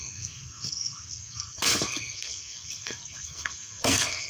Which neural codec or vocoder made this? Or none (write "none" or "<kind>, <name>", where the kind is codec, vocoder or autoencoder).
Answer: codec, SNAC